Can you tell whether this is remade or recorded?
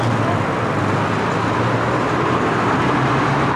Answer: recorded